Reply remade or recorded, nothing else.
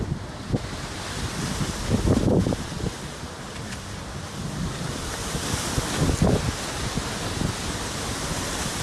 recorded